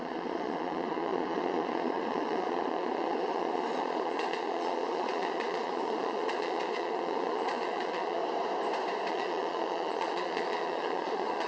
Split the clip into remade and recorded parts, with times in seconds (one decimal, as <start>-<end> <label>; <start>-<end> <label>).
0.0-8.2 remade; 8.2-9.1 recorded; 9.1-11.5 remade